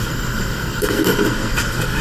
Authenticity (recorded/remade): remade